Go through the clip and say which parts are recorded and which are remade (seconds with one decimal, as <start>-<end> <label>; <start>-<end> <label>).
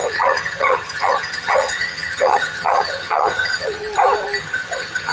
0.0-3.8 remade; 3.8-4.4 recorded; 4.4-5.1 remade